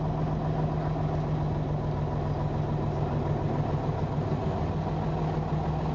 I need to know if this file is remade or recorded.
recorded